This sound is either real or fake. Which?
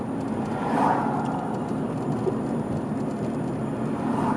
real